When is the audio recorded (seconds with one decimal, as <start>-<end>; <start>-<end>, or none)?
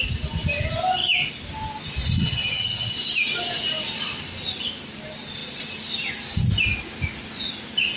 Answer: 0.0-2.2; 2.9-8.0